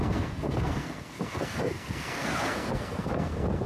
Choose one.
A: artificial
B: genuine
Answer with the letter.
A